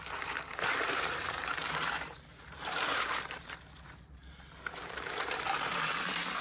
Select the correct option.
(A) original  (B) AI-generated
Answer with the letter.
B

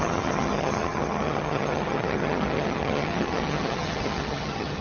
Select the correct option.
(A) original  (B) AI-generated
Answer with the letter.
B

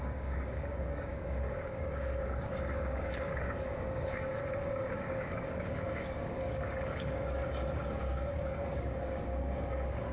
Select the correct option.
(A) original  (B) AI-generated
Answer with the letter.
B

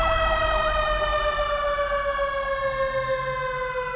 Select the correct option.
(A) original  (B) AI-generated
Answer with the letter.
A